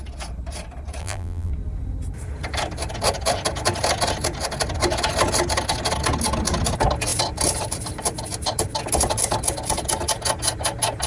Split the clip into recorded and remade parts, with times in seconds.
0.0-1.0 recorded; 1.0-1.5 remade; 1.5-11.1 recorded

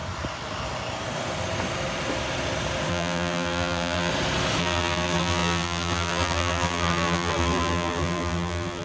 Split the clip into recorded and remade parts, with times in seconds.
0.0-2.9 recorded; 2.9-4.1 remade; 4.1-4.6 recorded; 4.6-8.8 remade

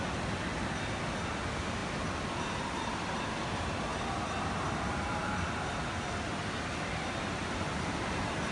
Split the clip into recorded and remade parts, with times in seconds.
0.0-7.4 recorded; 7.4-8.0 remade; 8.0-8.5 recorded

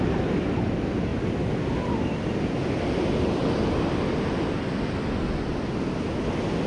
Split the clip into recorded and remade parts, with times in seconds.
0.0-6.7 recorded

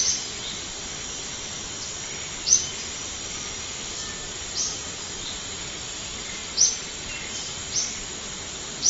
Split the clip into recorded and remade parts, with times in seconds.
0.0-6.4 remade; 6.4-7.1 recorded; 7.1-7.6 remade; 7.6-8.1 recorded; 8.1-8.9 remade

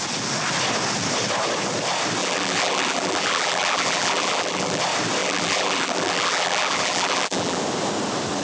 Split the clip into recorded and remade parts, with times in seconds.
0.0-2.2 recorded; 2.2-4.8 remade; 4.8-5.2 recorded; 5.2-7.6 remade; 7.6-8.4 recorded

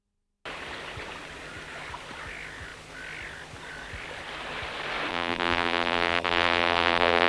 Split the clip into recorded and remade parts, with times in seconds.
0.0-5.1 recorded; 5.1-7.3 remade

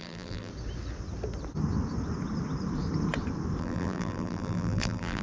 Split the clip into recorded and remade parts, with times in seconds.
0.0-0.5 remade; 0.5-3.6 recorded; 3.6-5.2 remade